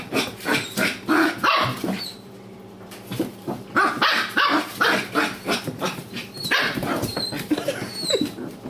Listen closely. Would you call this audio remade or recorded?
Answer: remade